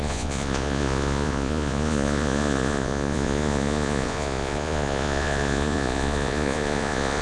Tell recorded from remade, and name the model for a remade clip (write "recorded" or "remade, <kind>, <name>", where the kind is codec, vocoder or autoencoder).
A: remade, vocoder, Vocos